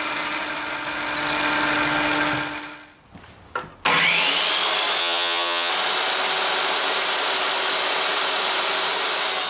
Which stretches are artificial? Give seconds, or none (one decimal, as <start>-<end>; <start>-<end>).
5.0-5.7